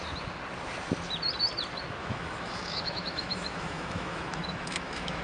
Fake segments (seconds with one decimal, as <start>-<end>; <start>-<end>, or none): 2.0-5.2